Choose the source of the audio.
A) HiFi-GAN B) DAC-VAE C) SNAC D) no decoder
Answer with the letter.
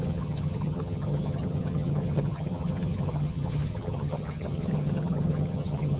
A